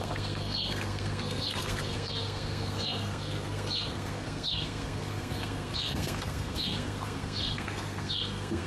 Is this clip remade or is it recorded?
remade